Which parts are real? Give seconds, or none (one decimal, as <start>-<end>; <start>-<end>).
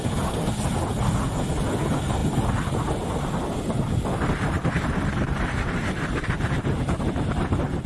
0.0-2.2; 6.6-7.9